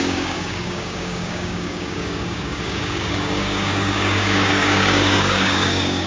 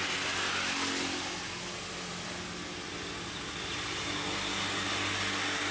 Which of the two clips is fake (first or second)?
first